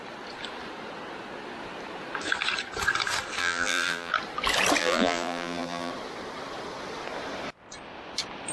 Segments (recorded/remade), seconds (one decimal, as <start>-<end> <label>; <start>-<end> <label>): 0.0-3.4 recorded; 3.4-4.1 remade; 4.1-4.8 recorded; 4.8-5.9 remade; 5.9-8.5 recorded

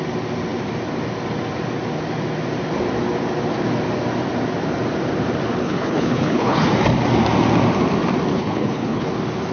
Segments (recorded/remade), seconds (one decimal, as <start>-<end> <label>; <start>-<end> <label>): 0.0-5.6 recorded; 5.6-6.7 remade; 6.7-8.3 recorded; 8.3-9.1 remade; 9.1-9.5 recorded